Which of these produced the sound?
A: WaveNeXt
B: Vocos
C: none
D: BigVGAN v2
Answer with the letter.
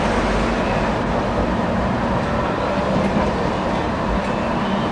C